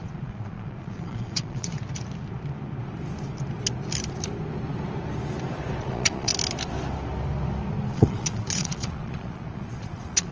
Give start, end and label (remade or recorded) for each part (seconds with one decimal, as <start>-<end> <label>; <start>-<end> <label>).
0.0-1.7 remade; 1.7-5.8 recorded; 5.8-6.3 remade; 6.3-7.9 recorded; 7.9-10.3 remade